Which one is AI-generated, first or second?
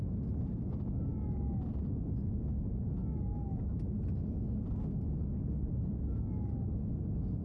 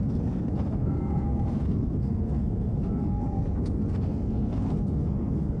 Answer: second